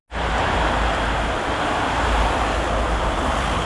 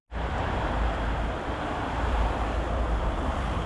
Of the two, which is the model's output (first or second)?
second